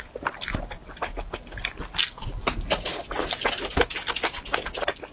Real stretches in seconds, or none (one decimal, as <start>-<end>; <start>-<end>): 0.0-5.1